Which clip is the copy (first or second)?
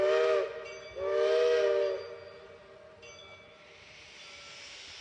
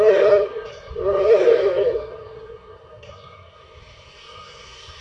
second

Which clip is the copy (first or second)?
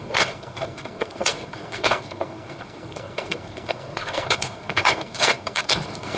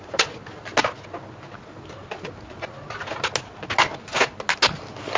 first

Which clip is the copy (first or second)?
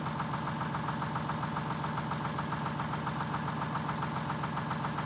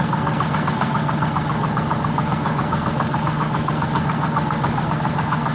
second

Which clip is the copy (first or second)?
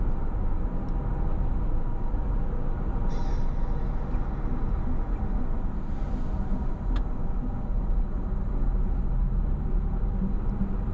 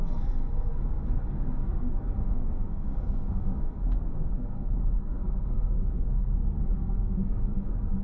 second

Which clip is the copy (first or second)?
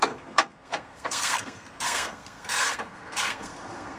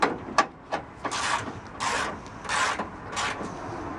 first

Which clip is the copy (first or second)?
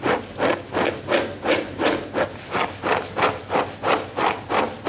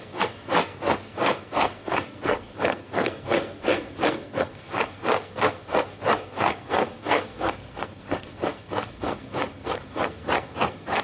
second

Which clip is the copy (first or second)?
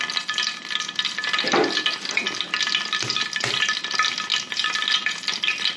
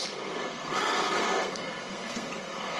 second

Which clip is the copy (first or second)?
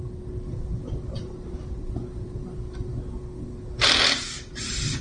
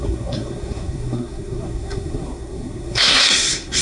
second